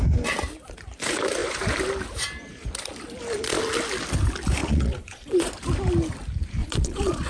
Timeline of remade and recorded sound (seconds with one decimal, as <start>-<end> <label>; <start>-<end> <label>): 0.0-4.6 recorded; 4.6-5.5 remade; 5.5-6.6 recorded; 6.6-7.3 remade